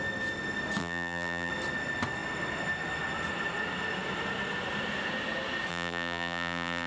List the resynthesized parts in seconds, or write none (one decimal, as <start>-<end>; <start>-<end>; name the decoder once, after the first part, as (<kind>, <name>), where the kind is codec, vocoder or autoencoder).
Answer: 0.8-1.5 (vocoder, BigVGAN v2); 5.7-6.9